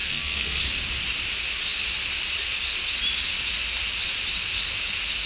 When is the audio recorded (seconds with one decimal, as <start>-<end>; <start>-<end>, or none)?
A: 0.6-5.3